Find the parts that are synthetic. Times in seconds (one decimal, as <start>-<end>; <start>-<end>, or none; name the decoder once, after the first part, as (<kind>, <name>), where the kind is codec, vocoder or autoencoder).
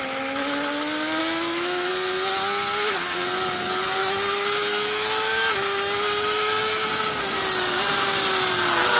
1.2-1.9 (autoencoder, DAC-VAE); 4.0-6.9